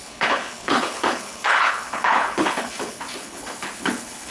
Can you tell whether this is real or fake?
fake